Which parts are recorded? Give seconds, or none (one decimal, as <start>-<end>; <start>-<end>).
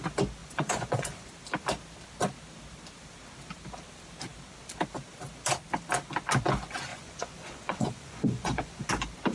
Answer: 0.0-0.4; 1.3-6.9; 8.9-9.3